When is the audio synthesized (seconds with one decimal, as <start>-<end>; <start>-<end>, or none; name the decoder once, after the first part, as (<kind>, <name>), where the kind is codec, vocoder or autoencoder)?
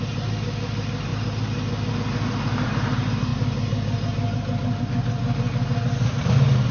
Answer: none